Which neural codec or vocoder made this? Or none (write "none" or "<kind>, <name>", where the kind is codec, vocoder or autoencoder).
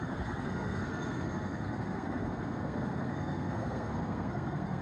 codec, SNAC